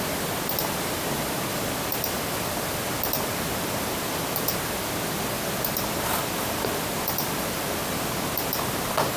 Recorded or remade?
remade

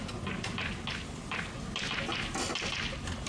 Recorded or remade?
recorded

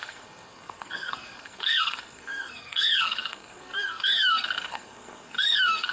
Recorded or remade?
remade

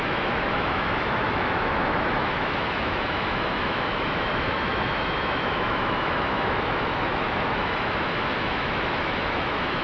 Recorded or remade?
remade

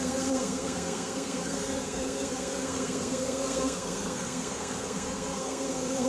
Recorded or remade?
remade